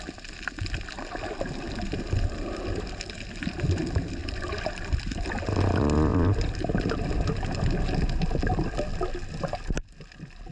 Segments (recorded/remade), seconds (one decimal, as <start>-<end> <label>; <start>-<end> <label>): 0.0-10.5 recorded